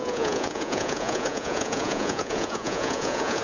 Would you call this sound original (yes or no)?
no